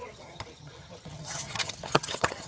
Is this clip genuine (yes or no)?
no